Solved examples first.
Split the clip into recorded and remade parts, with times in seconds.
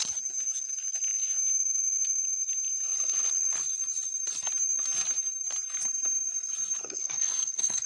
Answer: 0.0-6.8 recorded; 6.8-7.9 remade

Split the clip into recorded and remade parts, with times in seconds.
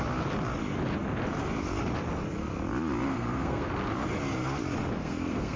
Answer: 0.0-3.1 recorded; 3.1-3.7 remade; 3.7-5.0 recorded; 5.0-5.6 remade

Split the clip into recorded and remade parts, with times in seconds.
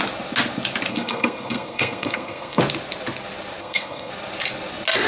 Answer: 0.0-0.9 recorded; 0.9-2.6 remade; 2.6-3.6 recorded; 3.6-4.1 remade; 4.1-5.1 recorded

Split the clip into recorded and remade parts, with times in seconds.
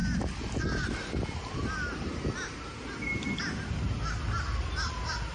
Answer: 0.0-5.3 recorded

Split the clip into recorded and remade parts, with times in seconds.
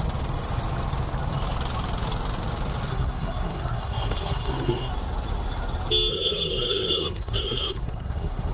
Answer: 0.0-2.9 recorded; 2.9-4.9 remade; 4.9-6.1 recorded; 6.1-8.5 remade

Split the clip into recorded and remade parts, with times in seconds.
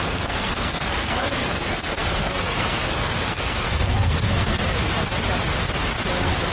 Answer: 0.0-4.8 remade; 4.8-6.1 recorded; 6.1-6.5 remade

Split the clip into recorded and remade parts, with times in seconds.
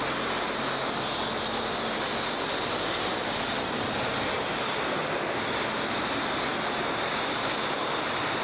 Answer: 0.0-8.4 recorded